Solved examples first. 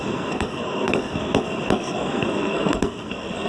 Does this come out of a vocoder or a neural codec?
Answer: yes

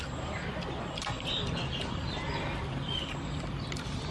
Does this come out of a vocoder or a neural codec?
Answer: no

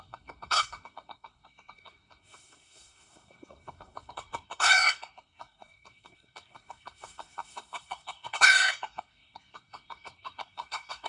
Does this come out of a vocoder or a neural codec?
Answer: yes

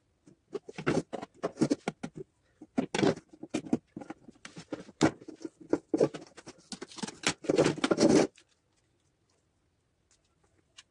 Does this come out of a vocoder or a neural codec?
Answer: no